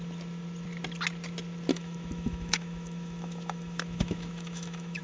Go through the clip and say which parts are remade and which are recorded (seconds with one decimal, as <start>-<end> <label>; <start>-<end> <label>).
0.0-1.7 recorded; 1.7-5.0 remade